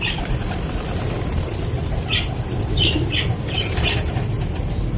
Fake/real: real